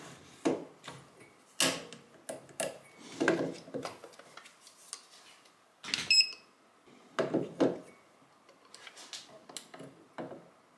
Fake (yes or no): no